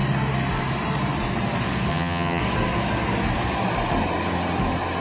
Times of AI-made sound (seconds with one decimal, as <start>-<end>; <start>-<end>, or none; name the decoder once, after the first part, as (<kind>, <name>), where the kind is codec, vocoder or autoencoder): 1.9-2.4 (vocoder, HiFi-GAN)